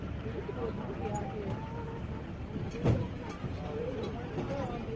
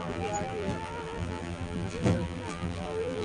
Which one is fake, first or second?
second